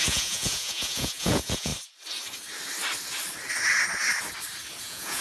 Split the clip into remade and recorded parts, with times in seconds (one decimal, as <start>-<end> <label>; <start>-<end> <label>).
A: 0.0-1.7 remade; 1.7-4.8 recorded; 4.8-5.2 remade